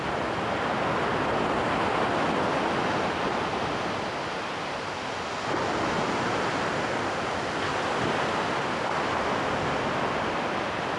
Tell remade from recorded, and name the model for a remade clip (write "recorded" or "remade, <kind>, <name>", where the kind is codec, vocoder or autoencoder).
recorded